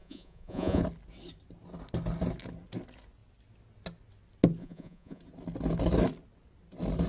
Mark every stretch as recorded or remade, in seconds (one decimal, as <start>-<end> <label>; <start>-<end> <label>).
0.0-0.8 remade; 0.8-4.6 recorded; 4.6-5.2 remade; 5.2-7.1 recorded